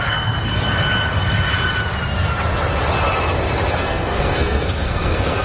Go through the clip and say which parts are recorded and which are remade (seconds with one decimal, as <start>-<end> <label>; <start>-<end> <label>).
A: 0.0-0.5 remade; 0.5-3.7 recorded; 3.7-5.4 remade